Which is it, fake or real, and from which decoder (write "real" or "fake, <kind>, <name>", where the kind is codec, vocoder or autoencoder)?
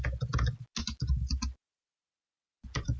real